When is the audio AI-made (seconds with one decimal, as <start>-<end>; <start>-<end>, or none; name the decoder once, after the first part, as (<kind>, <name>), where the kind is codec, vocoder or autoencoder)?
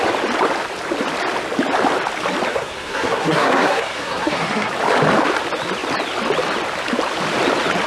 2.5-4.7 (codec, SNAC)